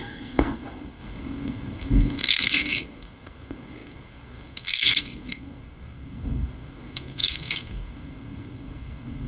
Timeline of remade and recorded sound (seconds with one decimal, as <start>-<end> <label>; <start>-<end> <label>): 0.0-9.3 remade